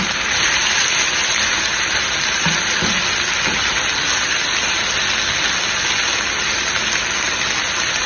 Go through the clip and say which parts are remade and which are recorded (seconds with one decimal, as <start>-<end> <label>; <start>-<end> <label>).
0.0-8.1 recorded